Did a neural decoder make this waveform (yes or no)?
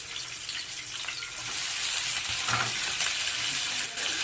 no